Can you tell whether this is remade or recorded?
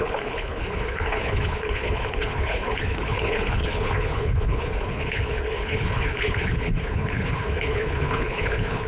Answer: remade